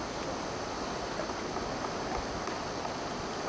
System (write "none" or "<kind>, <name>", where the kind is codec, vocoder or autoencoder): none